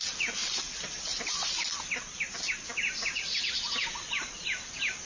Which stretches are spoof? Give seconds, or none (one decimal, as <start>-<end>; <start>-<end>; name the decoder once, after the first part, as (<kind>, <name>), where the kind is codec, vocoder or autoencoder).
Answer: none